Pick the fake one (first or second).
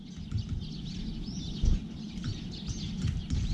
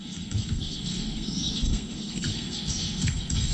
second